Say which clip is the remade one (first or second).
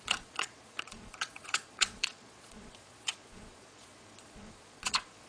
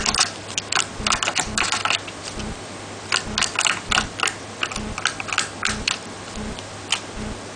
first